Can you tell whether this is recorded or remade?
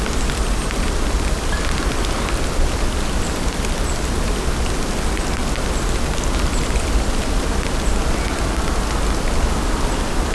recorded